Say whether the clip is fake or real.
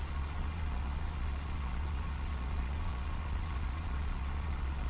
fake